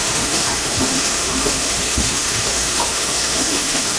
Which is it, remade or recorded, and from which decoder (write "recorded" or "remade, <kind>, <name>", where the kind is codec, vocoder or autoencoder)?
remade, autoencoder, DAC-VAE